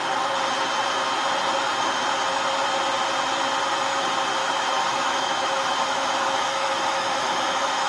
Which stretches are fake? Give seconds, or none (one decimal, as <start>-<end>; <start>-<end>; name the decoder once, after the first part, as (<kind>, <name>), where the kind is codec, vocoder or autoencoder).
4.4-7.9 (autoencoder, DAC-VAE)